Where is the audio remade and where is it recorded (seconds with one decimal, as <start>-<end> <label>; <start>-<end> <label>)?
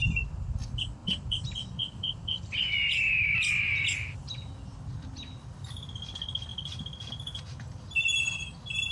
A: 0.0-1.0 recorded; 1.0-4.9 remade; 4.9-6.5 recorded; 6.5-7.1 remade; 7.1-8.9 recorded